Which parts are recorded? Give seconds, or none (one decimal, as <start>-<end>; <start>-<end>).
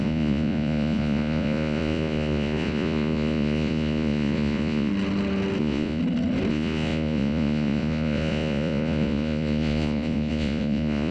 4.9-5.6; 6.0-6.5